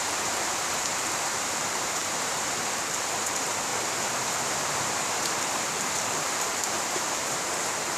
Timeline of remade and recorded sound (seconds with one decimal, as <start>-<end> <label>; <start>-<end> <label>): 0.0-3.7 remade; 3.7-4.6 recorded; 4.6-8.0 remade

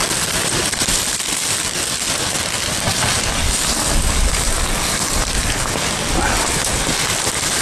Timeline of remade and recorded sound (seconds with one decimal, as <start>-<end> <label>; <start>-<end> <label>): 0.0-1.1 remade; 1.1-7.6 recorded

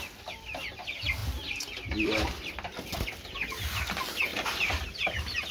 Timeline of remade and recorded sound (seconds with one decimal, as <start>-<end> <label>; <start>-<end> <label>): 0.0-4.3 recorded; 4.3-5.0 remade; 5.0-5.5 recorded